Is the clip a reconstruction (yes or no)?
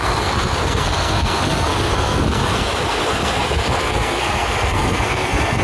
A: yes